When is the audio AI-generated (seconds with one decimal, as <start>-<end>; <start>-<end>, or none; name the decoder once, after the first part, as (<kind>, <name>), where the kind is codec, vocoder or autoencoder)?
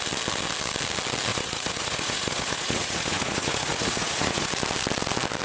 1.3-4.5 (vocoder, Vocos)